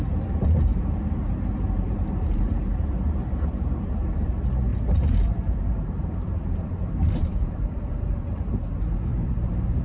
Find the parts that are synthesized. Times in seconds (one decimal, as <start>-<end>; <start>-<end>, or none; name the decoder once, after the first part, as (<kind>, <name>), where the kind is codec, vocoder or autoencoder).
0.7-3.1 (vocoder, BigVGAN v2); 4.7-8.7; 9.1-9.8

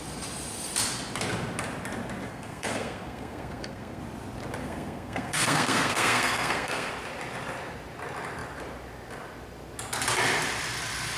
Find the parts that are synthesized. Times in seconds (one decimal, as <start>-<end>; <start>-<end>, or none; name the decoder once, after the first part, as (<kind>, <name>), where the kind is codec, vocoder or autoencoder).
2.3-4.0 (codec, SNAC); 4.6-6.9

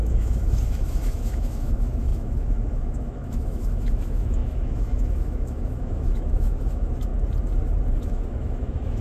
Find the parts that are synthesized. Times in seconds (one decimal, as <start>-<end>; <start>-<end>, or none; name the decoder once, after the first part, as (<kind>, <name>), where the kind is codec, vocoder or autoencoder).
0.0-7.1 (autoencoder, DAC-VAE); 8.0-9.0

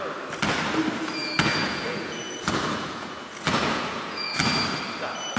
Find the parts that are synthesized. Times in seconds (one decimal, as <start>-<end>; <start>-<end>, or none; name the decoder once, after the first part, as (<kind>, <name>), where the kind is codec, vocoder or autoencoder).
1.2-4.4 (vocoder, Vocos)